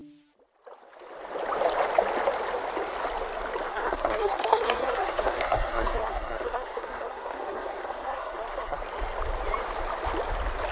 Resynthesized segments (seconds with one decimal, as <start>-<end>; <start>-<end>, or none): 3.7-8.8